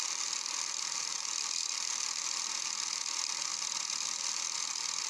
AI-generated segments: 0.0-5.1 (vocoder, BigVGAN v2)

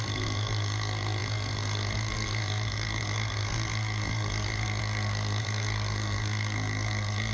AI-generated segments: 0.0-7.3 (codec, SNAC)

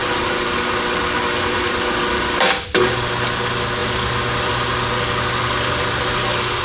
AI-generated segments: none